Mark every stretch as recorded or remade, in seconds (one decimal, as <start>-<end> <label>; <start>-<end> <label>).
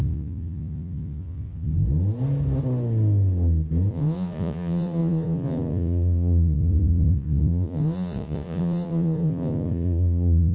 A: 0.0-1.7 remade; 1.7-3.9 recorded; 3.9-10.5 remade